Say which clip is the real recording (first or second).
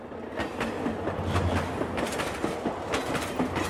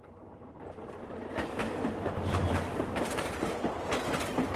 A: first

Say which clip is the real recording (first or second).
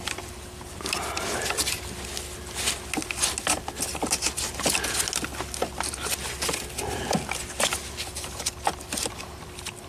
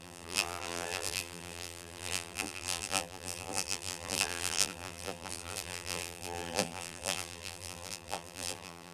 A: first